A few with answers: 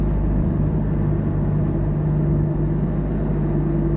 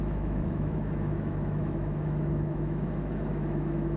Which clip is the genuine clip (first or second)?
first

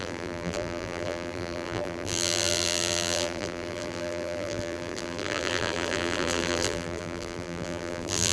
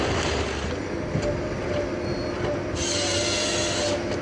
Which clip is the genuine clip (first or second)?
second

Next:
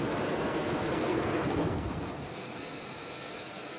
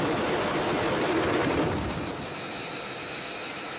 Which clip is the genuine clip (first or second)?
second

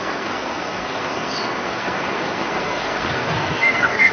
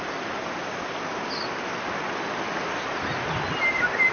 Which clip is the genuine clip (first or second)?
second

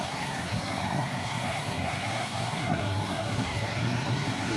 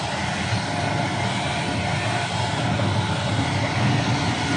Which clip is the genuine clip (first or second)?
second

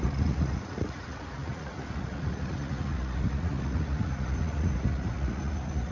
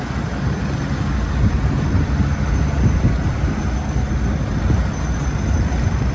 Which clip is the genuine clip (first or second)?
second